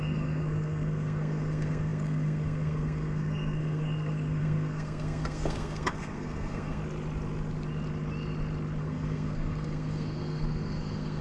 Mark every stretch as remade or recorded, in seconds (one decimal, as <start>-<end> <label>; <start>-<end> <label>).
0.0-6.8 remade; 6.8-8.8 recorded; 8.8-11.2 remade